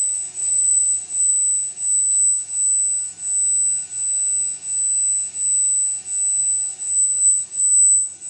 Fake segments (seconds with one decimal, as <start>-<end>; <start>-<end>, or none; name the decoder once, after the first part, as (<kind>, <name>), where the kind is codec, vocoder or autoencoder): 0.4-1.3 (vocoder, BigVGAN v2)